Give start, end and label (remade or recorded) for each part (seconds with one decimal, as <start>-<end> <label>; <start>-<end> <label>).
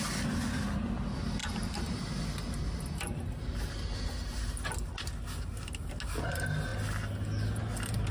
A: 0.0-1.4 recorded; 1.4-2.0 remade; 2.0-8.1 recorded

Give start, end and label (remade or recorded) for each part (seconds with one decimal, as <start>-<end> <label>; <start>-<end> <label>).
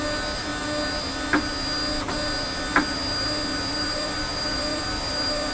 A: 0.0-0.5 remade; 0.5-3.7 recorded; 3.7-5.5 remade